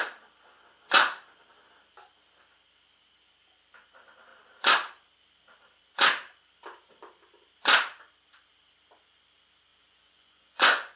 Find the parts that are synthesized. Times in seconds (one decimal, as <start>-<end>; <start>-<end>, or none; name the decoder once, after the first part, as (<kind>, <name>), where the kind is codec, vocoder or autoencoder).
9.7-11.0 (vocoder, Vocos)